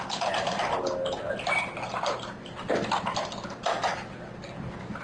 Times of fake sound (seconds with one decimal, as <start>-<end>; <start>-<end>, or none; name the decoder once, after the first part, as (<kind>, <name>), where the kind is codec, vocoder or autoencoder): none